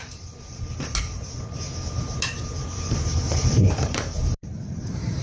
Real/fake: fake